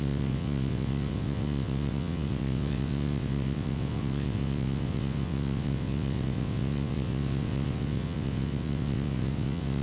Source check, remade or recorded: remade